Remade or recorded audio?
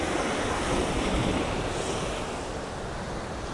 remade